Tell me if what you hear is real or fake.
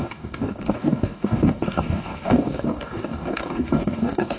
fake